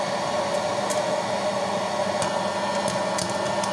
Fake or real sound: real